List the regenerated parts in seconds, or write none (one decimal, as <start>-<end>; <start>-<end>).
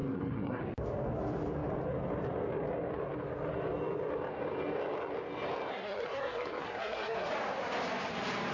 0.0-0.6; 5.7-7.3